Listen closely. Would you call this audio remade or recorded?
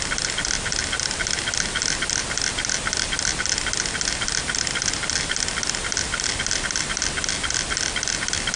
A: recorded